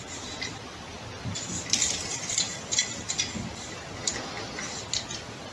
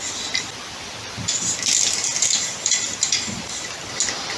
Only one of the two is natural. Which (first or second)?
second